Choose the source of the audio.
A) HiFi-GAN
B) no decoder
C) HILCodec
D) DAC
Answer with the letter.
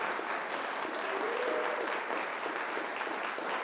B